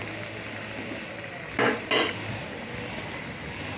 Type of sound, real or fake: real